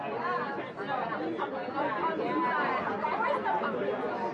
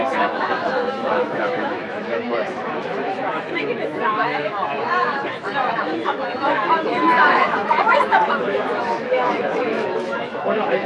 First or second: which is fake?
second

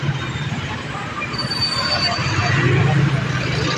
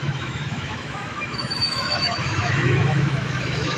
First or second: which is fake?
second